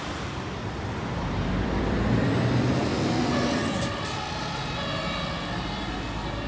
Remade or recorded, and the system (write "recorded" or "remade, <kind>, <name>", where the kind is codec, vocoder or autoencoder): remade, vocoder, BigVGAN v2